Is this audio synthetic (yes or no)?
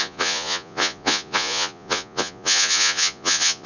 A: yes